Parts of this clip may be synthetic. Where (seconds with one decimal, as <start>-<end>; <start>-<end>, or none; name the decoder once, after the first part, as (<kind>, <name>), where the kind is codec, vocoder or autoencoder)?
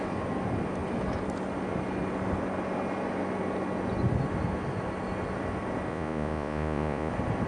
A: 5.9-7.1 (vocoder, Vocos)